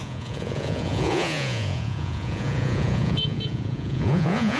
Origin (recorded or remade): remade